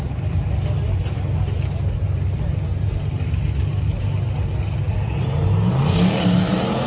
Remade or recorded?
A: recorded